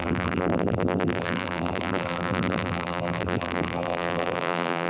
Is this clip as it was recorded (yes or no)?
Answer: no